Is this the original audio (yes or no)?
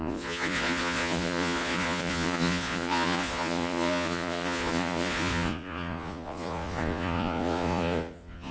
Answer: no